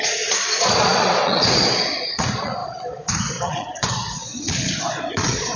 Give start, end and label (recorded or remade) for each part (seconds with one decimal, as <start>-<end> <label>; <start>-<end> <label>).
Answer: 0.0-5.6 remade